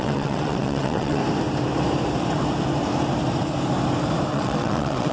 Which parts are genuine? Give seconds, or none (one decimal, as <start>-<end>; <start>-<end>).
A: 1.2-4.3